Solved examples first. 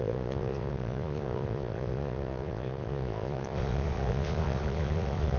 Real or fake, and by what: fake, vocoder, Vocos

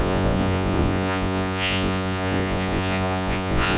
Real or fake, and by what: fake, vocoder, Vocos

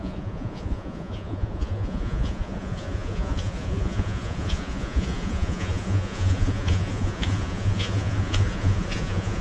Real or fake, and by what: fake, vocoder, Vocos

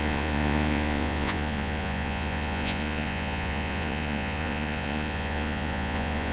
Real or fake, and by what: fake, vocoder, Vocos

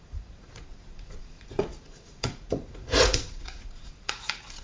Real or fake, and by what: fake, vocoder, Vocos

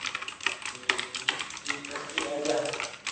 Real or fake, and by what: real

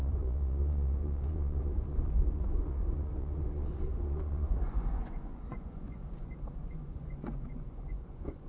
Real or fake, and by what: fake, vocoder, Vocos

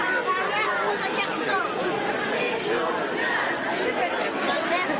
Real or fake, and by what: real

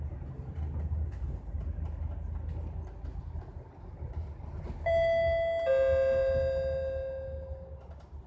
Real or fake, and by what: real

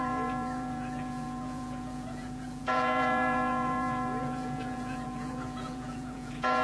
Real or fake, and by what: fake, vocoder, Vocos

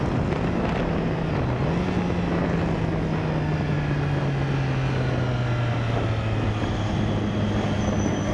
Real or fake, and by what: real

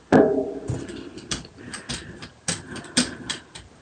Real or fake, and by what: real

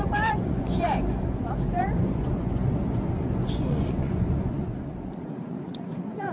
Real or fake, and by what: fake, vocoder, Vocos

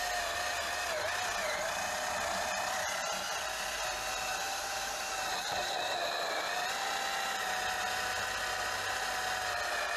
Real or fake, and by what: real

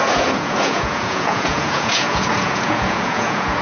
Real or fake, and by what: fake, vocoder, Vocos